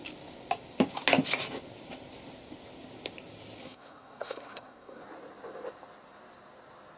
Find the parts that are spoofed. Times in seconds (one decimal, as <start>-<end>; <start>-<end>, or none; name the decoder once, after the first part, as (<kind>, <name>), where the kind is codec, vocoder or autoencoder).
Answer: 3.6-5.0 (codec, SNAC)